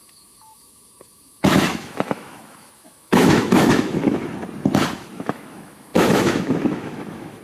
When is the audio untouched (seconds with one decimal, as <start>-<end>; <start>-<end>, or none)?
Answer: 4.2-4.9

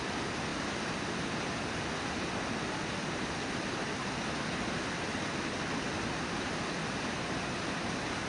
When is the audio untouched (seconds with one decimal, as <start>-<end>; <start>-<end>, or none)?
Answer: 0.0-8.3

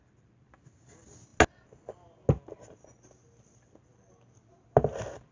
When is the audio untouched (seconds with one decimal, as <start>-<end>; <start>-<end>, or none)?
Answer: 0.0-5.3

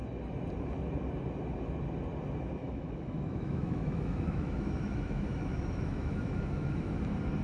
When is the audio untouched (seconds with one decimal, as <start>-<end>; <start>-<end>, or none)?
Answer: 0.0-2.6; 7.0-7.4

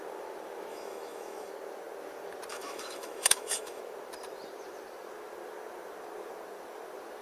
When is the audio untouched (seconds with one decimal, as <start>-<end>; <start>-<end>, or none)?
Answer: 0.0-0.7; 1.5-2.5; 3.8-7.2

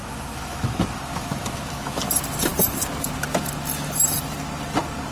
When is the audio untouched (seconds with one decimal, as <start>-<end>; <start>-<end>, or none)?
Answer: 2.0-5.1

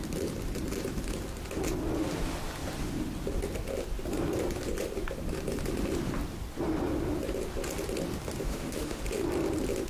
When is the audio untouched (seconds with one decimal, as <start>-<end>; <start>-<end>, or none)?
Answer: 0.0-8.4; 9.0-9.9